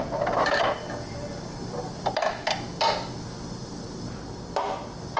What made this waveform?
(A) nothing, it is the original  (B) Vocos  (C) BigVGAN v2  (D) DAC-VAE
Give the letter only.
A